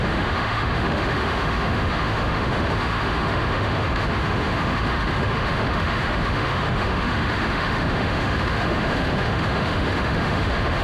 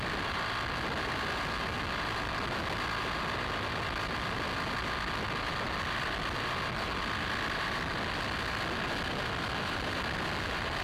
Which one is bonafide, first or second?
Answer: second